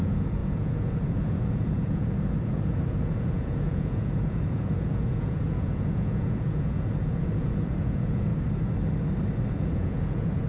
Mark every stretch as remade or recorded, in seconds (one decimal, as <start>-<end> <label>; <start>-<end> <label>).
0.0-8.3 remade; 8.3-9.5 recorded; 9.5-10.5 remade